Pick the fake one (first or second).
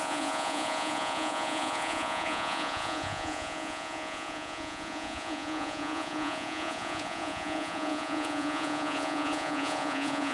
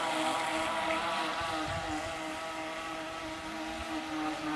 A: first